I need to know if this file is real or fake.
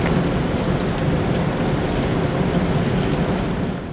real